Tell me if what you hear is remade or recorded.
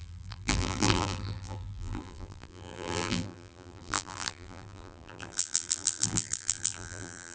remade